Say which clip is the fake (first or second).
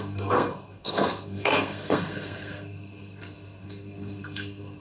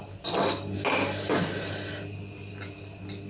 first